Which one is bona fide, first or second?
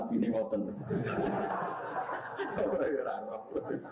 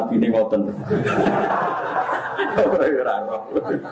second